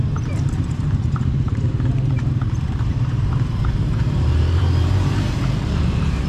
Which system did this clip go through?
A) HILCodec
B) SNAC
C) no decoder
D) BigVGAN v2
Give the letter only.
D